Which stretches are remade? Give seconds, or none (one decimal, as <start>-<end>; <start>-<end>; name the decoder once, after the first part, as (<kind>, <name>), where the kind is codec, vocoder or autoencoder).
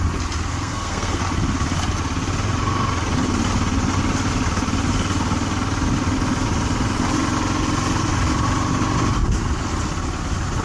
0.5-1.2 (codec, SNAC)